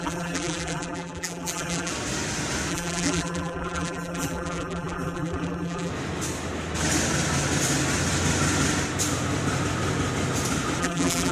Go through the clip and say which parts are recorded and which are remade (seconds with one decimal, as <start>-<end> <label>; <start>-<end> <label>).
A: 0.0-1.9 remade; 1.9-2.7 recorded; 2.7-5.9 remade; 5.9-10.8 recorded; 10.8-11.3 remade